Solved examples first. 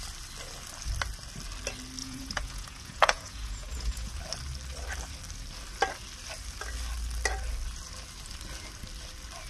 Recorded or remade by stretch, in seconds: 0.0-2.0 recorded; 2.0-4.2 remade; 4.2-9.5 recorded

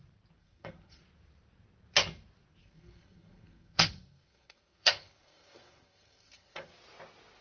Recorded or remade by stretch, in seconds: 0.0-0.4 recorded; 0.4-1.0 remade; 1.0-2.6 recorded; 2.6-6.7 remade; 6.7-7.4 recorded

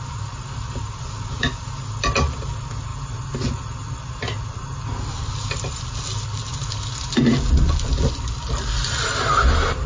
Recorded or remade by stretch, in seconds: 0.0-9.9 recorded

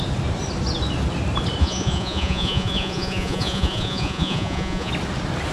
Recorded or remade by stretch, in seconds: 0.0-1.6 recorded; 1.6-4.9 remade; 4.9-5.5 recorded

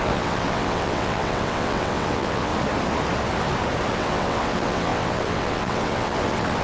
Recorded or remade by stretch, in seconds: 0.0-2.5 remade; 2.5-3.9 recorded; 3.9-6.6 remade

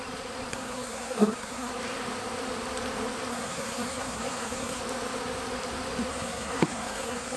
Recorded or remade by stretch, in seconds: 0.0-0.5 recorded; 0.5-1.7 remade; 1.7-3.3 recorded; 3.3-4.8 remade; 4.8-6.1 recorded; 6.1-7.4 remade

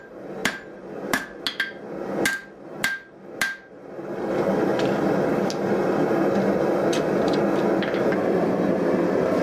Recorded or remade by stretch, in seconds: 0.0-9.4 recorded